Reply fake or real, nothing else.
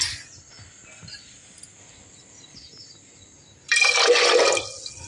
real